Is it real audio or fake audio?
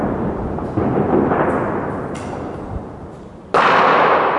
real